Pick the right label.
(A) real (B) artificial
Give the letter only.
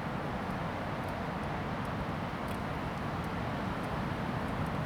A